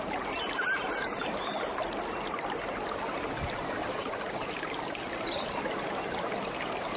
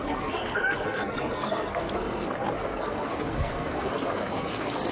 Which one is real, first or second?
first